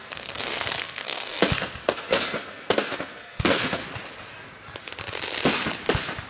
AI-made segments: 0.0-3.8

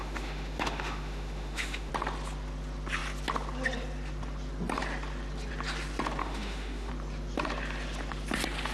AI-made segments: 0.0-1.9; 6.2-6.9

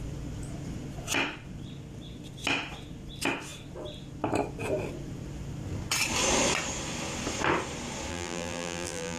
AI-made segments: 8.1-9.2

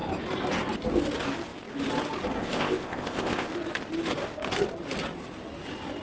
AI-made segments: 2.4-3.5

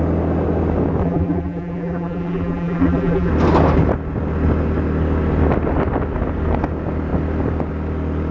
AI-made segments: 1.0-3.3

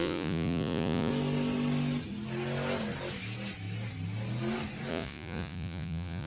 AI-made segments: 0.0-1.1; 4.9-6.3

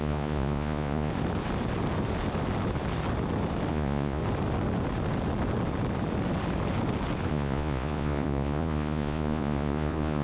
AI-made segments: 0.0-1.1; 3.7-4.2; 7.3-10.2

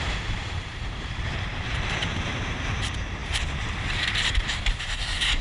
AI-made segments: 0.0-5.4